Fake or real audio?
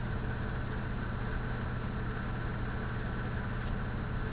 real